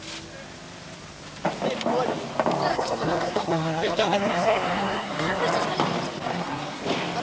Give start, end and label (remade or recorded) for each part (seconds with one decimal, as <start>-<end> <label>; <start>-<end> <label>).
0.0-2.7 recorded; 2.7-5.4 remade; 5.4-6.3 recorded; 6.3-6.8 remade; 6.8-7.2 recorded